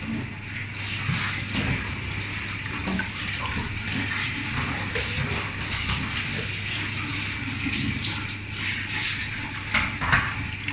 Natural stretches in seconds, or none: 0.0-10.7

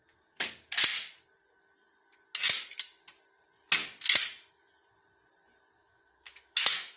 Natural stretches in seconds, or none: 0.0-5.8

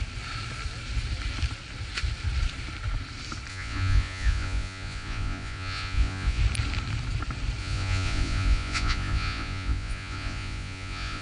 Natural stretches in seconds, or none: 0.0-3.5; 6.4-7.6

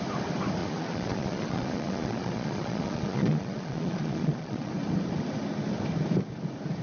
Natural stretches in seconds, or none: 0.0-0.6; 4.7-6.8

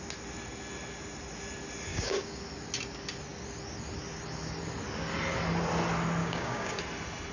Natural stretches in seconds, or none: 0.0-1.9; 2.4-6.2; 6.8-7.3

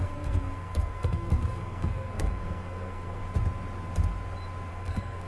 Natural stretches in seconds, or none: 3.2-4.7

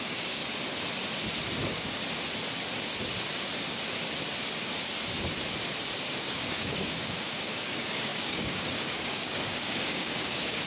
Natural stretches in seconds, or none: 0.4-1.6; 2.0-6.2